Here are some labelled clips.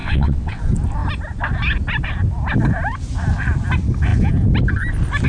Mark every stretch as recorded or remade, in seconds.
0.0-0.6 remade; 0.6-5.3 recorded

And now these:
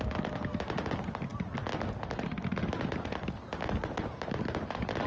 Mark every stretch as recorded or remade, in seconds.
0.0-5.1 recorded

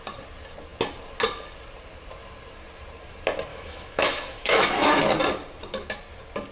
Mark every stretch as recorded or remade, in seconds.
0.0-3.5 recorded; 3.5-5.0 remade; 5.0-6.5 recorded

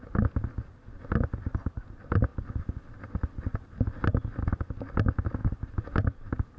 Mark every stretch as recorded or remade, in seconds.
0.0-6.6 recorded

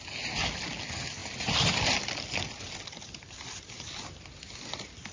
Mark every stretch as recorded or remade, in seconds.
0.0-5.1 recorded